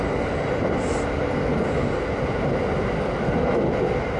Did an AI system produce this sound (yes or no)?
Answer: no